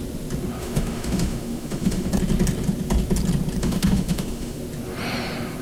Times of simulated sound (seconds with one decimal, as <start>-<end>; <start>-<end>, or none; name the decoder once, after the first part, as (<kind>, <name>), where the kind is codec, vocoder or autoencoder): 0.6-2.1 (autoencoder, DAC-VAE); 3.6-4.6